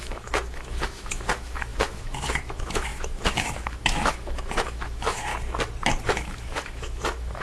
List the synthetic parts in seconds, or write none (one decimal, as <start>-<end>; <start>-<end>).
0.0-5.3; 6.1-7.4